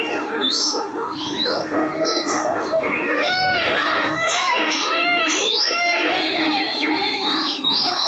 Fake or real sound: fake